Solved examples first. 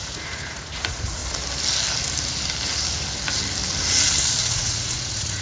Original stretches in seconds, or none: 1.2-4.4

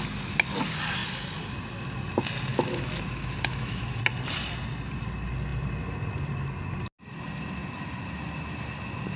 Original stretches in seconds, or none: 0.0-2.5; 4.0-9.2

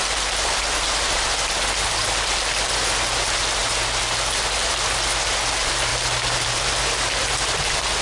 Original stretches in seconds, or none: 0.0-5.9; 6.6-8.0

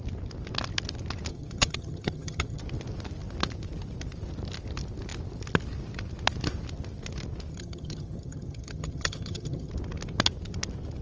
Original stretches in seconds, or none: 0.0-1.3; 2.6-7.5; 9.7-11.0

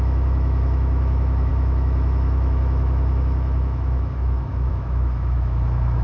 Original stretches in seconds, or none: none